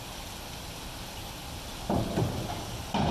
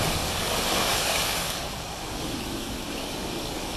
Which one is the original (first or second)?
first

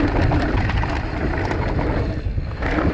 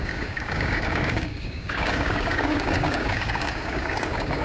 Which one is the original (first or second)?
first